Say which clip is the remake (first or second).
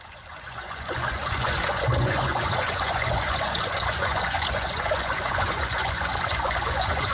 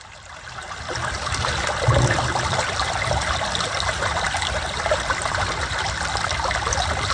first